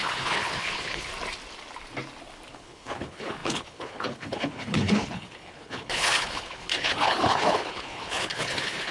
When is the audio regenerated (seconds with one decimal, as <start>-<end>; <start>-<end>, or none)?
0.0-1.1; 2.5-8.9